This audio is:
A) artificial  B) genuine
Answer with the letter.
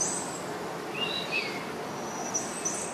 B